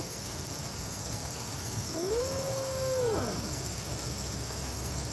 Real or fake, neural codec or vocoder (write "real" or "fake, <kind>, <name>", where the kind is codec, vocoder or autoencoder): fake, codec, SNAC